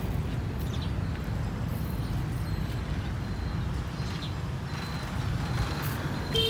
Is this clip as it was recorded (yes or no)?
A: yes